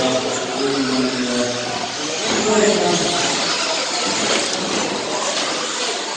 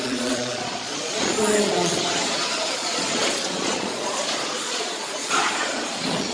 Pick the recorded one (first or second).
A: first